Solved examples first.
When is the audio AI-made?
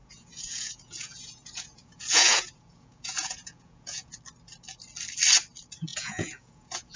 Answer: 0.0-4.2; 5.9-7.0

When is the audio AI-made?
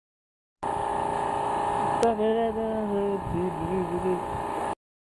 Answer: none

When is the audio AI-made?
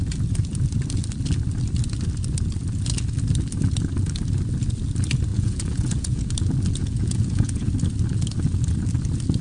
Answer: 5.3-6.3; 6.8-7.7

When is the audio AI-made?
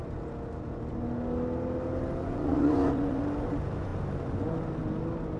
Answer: 2.2-3.2